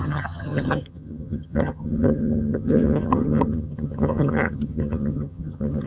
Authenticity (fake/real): fake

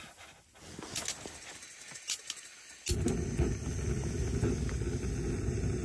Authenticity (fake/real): real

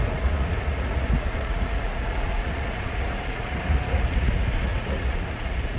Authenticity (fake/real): fake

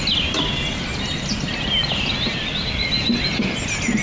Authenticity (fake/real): real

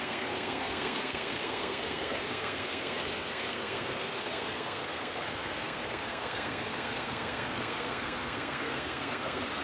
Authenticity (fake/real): fake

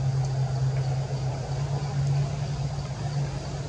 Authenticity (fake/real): real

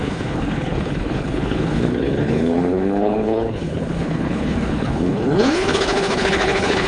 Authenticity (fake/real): fake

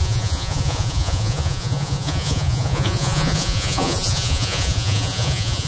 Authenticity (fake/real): fake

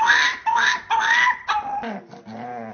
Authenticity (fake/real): real